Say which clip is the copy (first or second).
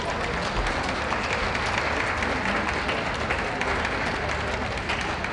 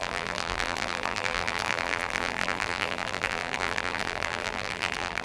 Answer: second